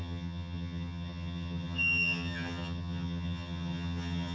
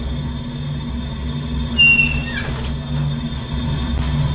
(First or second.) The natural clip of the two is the second